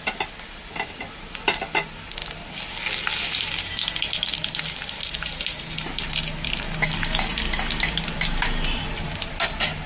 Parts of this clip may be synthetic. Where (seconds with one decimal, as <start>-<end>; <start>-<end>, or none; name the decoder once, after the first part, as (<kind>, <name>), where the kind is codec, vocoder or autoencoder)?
none